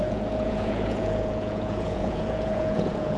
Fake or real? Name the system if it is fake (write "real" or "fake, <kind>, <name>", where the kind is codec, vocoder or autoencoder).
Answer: fake, vocoder, Vocos